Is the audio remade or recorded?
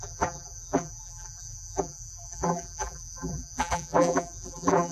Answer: remade